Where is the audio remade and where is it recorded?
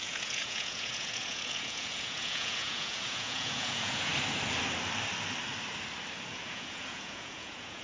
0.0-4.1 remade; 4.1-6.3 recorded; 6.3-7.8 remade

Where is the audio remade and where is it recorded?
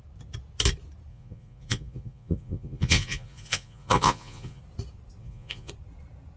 0.0-1.1 recorded; 1.1-4.6 remade; 4.6-5.2 recorded; 5.2-5.7 remade; 5.7-6.4 recorded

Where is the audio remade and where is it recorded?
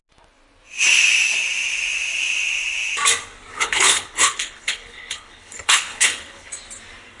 0.0-3.5 recorded; 3.5-6.5 remade; 6.5-7.2 recorded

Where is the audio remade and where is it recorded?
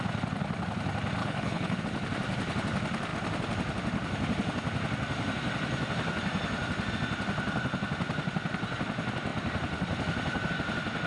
0.0-1.2 recorded; 1.2-1.8 remade; 1.8-11.1 recorded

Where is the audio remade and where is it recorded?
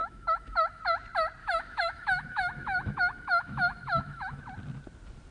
0.0-0.8 remade; 0.8-1.4 recorded; 1.4-4.4 remade; 4.4-5.3 recorded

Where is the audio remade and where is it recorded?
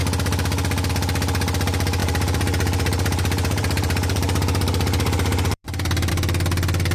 0.0-2.0 recorded; 2.0-6.1 remade; 6.1-6.9 recorded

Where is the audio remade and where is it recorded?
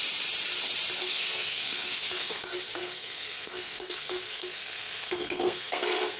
0.0-1.0 recorded; 1.0-2.4 remade; 2.4-2.8 recorded; 2.8-6.2 remade